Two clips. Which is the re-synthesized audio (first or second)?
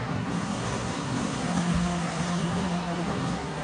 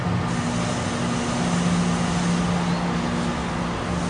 first